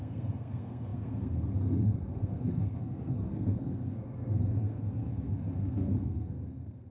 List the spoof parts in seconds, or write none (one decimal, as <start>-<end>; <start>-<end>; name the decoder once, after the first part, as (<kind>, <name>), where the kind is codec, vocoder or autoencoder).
0.0-6.9 (codec, SNAC)